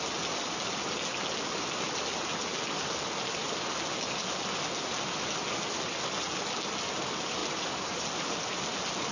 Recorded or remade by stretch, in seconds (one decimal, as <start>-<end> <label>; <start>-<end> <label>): 0.0-9.1 recorded

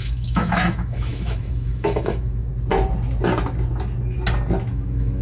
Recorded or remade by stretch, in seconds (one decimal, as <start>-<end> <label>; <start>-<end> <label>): 0.0-2.5 remade; 2.5-4.7 recorded; 4.7-5.2 remade

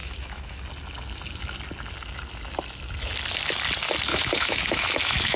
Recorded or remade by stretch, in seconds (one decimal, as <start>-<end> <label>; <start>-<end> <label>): 0.0-0.6 remade; 0.6-4.1 recorded; 4.1-5.4 remade

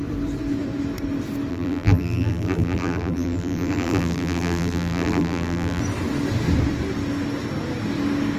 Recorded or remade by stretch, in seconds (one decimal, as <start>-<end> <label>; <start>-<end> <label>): 0.0-1.5 recorded; 1.5-5.8 remade; 5.8-8.4 recorded